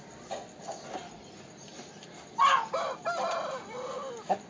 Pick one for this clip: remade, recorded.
recorded